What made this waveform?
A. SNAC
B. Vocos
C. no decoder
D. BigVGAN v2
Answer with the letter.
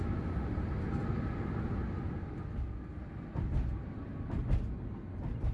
C